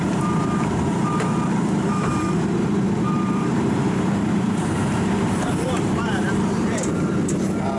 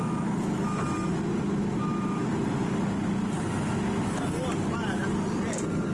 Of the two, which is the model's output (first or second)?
first